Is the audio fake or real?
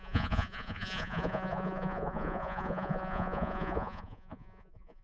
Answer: fake